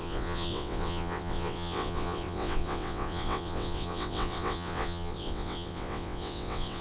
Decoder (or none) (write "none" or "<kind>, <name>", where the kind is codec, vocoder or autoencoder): vocoder, WaveNeXt